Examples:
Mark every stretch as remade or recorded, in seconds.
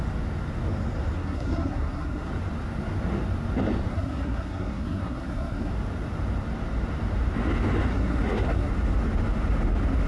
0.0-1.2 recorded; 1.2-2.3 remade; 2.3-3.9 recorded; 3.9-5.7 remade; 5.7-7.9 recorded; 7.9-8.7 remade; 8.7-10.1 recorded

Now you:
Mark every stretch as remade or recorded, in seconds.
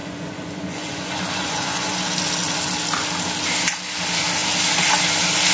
0.0-2.0 remade; 2.0-5.5 recorded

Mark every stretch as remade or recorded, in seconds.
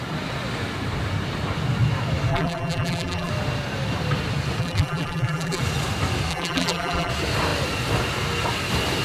0.0-2.3 recorded; 2.3-3.3 remade; 3.3-4.6 recorded; 4.6-5.6 remade; 5.6-6.3 recorded; 6.3-7.1 remade; 7.1-9.0 recorded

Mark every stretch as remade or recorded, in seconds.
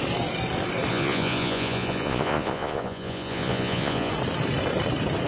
0.0-0.9 recorded; 0.9-4.1 remade; 4.1-5.3 recorded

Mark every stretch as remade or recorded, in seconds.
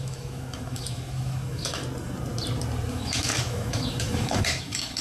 0.0-1.8 remade; 1.8-2.9 recorded; 2.9-5.0 remade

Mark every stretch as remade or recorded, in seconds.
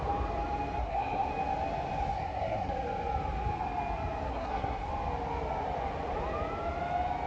0.0-0.8 recorded; 0.8-1.3 remade; 1.3-2.1 recorded; 2.1-2.7 remade; 2.7-4.3 recorded; 4.3-4.9 remade; 4.9-7.3 recorded